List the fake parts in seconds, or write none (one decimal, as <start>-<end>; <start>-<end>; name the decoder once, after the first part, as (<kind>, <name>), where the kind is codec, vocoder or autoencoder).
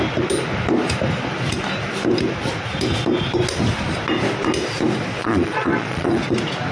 5.2-6.2 (vocoder, Vocos)